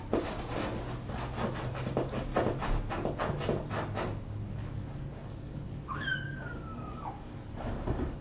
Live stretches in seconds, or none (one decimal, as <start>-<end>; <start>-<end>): 0.0-4.6; 7.6-8.2